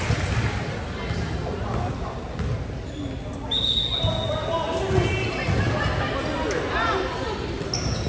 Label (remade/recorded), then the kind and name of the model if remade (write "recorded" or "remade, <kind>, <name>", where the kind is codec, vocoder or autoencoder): recorded